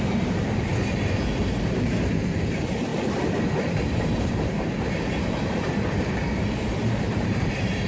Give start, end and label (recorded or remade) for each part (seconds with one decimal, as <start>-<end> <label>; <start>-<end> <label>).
0.0-0.7 remade; 0.7-1.4 recorded; 1.4-2.9 remade; 2.9-3.9 recorded; 3.9-6.2 remade; 6.2-6.8 recorded; 6.8-7.9 remade